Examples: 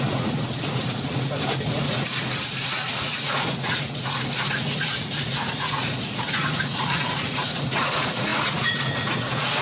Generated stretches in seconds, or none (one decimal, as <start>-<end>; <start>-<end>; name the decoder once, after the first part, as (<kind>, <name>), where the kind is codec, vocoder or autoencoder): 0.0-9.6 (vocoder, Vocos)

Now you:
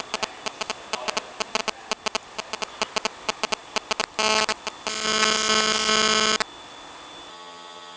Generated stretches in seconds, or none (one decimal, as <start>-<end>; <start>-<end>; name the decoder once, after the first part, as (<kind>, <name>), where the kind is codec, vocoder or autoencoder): 7.3-8.0 (vocoder, HiFi-GAN)

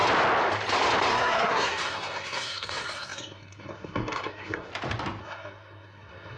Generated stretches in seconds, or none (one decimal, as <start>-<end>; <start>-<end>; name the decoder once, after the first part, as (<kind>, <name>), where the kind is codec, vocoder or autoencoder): 1.1-4.7 (codec, SNAC); 5.2-6.4

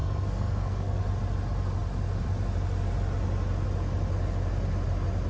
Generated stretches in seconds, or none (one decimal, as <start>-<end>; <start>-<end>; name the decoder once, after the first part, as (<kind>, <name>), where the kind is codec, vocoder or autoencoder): 0.0-1.0 (codec, SNAC)